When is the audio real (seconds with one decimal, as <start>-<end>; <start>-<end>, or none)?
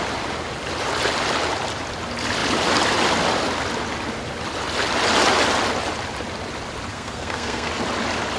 0.0-6.9; 7.7-8.4